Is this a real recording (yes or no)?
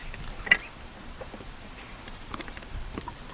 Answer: no